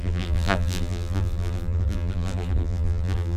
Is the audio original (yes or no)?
no